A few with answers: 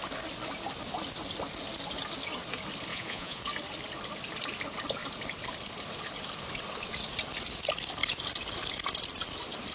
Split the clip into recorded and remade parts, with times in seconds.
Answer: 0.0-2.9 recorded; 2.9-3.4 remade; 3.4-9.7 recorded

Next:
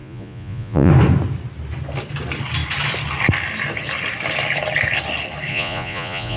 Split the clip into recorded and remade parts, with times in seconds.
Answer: 0.0-0.9 remade; 0.9-5.5 recorded; 5.5-6.4 remade

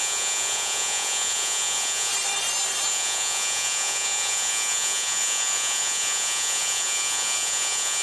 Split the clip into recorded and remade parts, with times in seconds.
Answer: 0.0-2.1 remade; 2.1-2.9 recorded; 2.9-8.0 remade

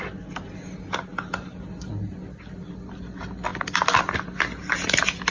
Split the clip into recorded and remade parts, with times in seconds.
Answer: 0.0-5.3 recorded

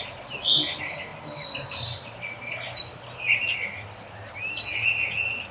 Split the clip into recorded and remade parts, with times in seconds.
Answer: 0.0-5.5 recorded

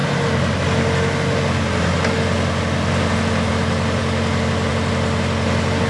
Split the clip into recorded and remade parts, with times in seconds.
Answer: 0.0-5.9 recorded

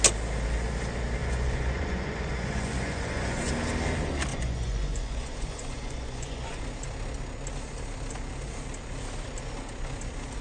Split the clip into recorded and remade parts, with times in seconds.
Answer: 0.0-1.2 recorded; 1.2-3.5 remade; 3.5-4.3 recorded; 4.3-6.6 remade; 6.6-10.4 recorded

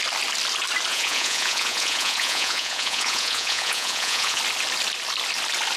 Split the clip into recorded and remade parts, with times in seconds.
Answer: 0.0-0.9 recorded; 0.9-4.4 remade; 4.4-5.8 recorded